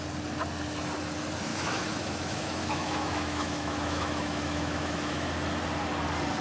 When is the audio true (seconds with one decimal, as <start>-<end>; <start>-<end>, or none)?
0.0-1.5; 5.3-6.4